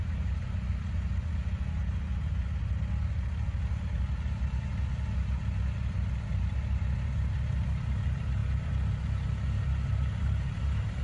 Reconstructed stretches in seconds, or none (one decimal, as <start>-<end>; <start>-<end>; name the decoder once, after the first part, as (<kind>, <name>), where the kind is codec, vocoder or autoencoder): none